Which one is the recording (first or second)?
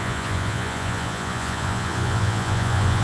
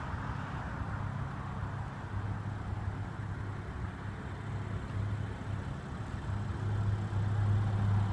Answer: second